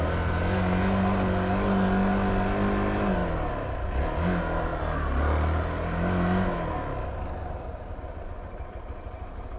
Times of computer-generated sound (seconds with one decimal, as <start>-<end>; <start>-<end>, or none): none